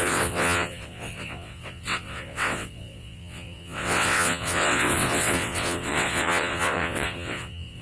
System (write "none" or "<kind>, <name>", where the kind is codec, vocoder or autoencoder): vocoder, WaveNeXt